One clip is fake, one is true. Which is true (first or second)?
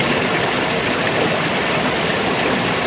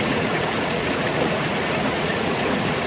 first